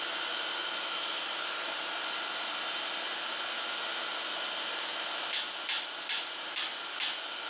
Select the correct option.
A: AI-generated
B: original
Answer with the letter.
B